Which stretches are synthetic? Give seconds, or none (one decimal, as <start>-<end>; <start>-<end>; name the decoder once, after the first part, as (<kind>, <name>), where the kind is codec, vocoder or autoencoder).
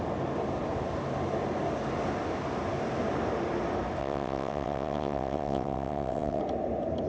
4.0-6.4 (vocoder, WaveNeXt)